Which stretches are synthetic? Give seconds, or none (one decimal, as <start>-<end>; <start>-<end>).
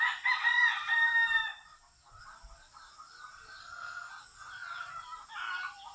3.6-4.1